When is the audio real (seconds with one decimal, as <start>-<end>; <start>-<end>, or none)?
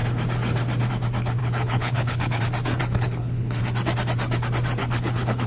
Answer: 0.0-1.4; 2.4-2.8; 3.6-4.8